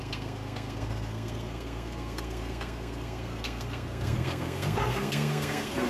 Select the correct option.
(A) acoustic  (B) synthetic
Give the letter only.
B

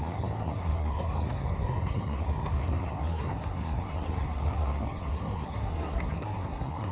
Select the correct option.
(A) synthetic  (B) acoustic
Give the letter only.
A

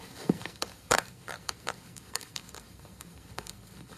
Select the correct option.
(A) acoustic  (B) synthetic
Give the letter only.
B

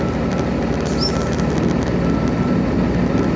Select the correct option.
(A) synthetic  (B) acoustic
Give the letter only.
B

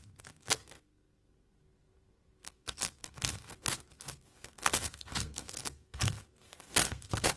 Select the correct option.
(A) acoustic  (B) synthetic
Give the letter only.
B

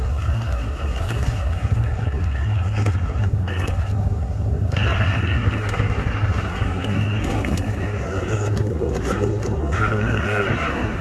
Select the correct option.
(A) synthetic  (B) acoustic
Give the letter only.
A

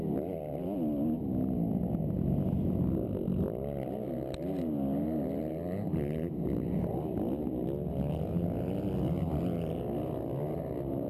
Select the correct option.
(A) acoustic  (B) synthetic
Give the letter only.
A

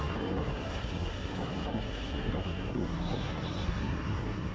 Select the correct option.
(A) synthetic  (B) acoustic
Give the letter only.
A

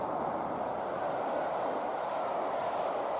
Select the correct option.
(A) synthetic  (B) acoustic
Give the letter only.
B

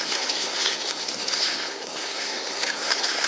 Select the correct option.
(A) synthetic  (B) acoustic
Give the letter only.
A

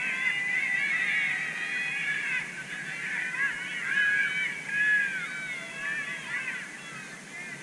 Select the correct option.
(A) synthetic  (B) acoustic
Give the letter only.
B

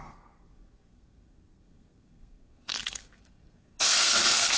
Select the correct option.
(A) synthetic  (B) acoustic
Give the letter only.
A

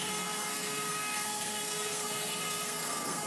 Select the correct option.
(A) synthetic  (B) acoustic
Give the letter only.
A